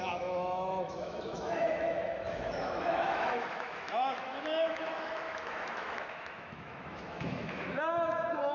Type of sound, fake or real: fake